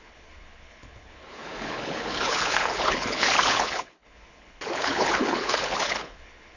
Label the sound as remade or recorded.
remade